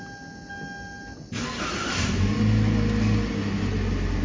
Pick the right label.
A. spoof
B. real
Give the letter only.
B